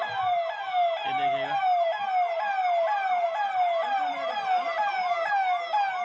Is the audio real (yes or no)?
yes